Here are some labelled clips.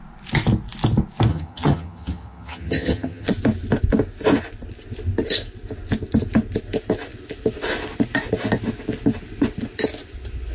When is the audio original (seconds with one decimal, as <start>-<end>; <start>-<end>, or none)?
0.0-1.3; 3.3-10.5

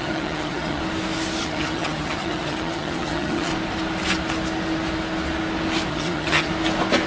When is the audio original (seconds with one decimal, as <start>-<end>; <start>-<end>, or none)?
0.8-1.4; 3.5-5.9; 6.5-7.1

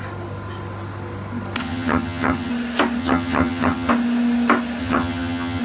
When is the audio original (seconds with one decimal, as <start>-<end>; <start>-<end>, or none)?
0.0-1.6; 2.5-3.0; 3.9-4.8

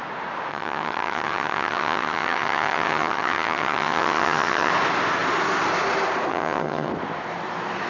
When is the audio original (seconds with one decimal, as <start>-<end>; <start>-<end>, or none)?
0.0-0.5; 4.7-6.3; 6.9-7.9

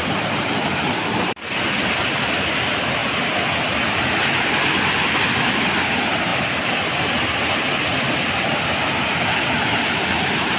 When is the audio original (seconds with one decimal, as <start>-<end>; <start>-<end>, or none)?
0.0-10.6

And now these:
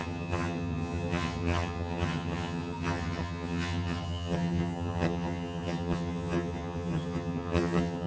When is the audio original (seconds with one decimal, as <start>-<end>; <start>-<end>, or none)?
none